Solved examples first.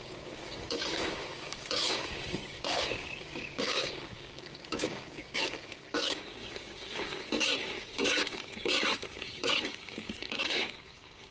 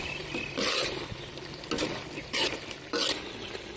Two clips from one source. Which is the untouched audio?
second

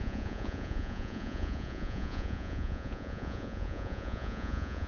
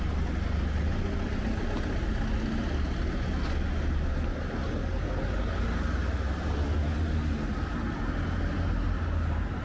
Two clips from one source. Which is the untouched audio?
second